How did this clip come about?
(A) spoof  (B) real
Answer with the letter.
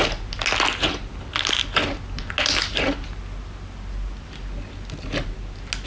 B